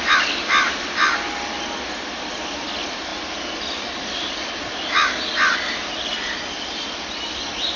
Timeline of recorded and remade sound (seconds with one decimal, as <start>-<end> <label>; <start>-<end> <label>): 0.0-7.8 recorded